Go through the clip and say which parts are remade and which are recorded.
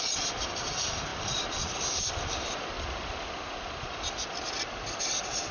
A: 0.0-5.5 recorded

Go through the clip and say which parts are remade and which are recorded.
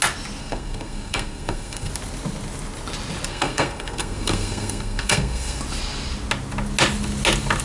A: 0.0-0.4 recorded; 0.4-1.9 remade; 1.9-3.3 recorded; 3.3-5.6 remade; 5.6-7.6 recorded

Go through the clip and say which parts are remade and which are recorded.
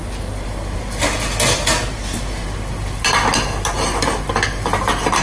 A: 0.0-5.2 recorded